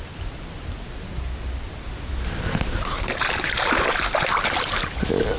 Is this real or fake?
real